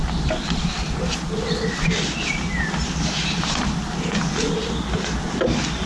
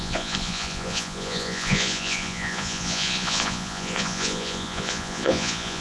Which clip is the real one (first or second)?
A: first